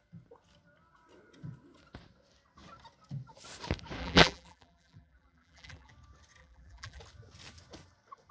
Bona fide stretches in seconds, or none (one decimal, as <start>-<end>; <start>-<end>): 0.0-4.0; 5.9-6.4; 7.0-8.3